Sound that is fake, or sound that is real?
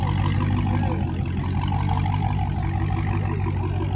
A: real